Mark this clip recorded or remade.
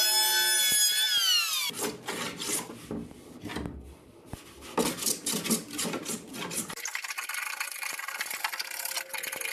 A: recorded